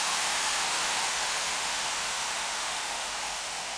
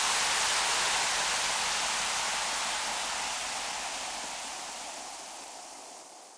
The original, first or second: second